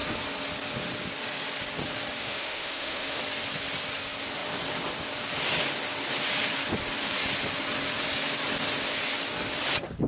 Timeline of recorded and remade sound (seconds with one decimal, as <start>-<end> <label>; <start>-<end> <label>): 0.0-2.2 recorded; 2.2-3.2 remade; 3.2-10.1 recorded